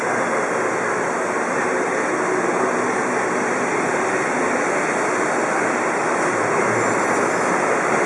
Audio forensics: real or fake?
real